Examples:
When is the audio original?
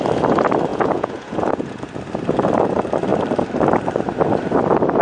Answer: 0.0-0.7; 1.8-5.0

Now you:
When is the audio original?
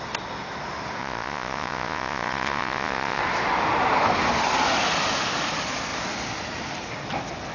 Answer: 0.0-1.0; 3.2-7.5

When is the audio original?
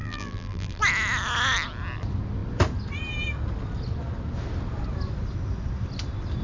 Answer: 0.8-6.4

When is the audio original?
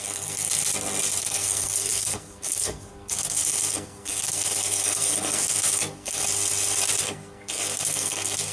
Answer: 0.6-1.2; 6.2-7.0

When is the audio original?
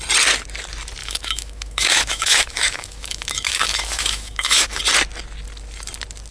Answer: 0.0-1.0; 4.8-6.3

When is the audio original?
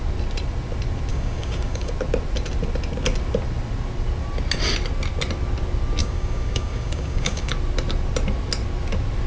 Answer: 0.0-1.1; 1.9-6.0; 7.5-9.3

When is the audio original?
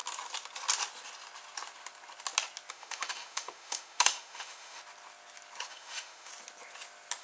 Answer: 0.0-2.7; 4.8-5.7; 6.3-7.2